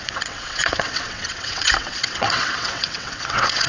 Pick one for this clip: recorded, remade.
remade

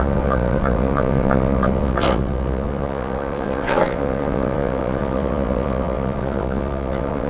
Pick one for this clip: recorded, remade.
remade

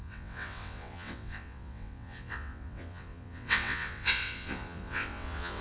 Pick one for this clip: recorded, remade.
remade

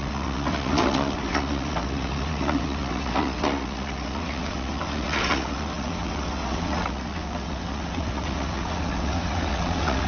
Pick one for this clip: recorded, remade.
remade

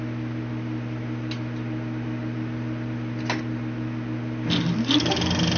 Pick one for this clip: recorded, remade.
recorded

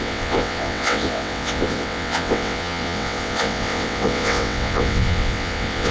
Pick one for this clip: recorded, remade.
remade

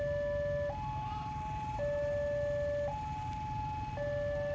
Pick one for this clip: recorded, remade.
recorded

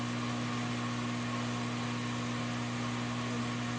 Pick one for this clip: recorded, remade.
recorded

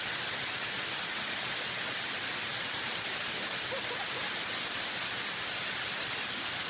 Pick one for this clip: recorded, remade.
recorded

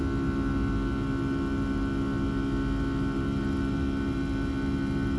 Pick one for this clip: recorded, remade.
recorded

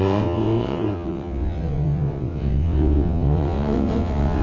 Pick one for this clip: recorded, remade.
remade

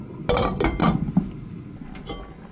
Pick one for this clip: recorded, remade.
recorded